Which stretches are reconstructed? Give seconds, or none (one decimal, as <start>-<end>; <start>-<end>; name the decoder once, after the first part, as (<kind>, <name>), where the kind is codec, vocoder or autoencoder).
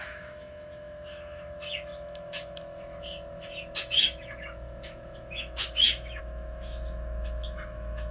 0.0-8.1 (autoencoder, DAC-VAE)